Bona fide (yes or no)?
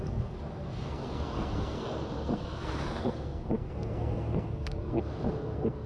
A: no